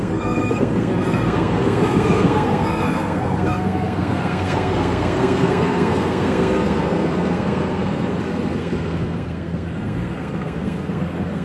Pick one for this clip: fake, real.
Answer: fake